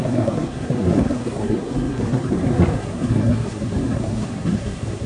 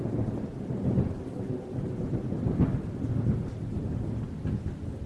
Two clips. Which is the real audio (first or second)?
second